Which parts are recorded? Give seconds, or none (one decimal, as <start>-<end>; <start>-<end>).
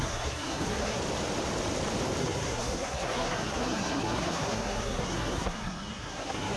1.0-2.2